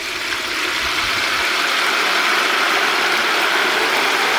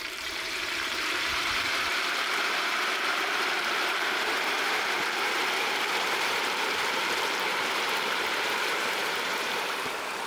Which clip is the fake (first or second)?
second